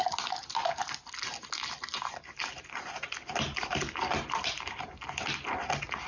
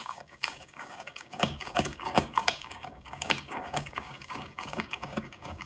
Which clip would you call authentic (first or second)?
first